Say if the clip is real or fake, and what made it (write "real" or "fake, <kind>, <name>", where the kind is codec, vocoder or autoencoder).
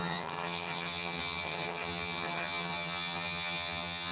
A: fake, vocoder, HiFi-GAN